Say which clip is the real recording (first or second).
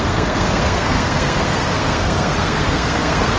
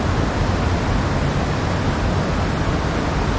second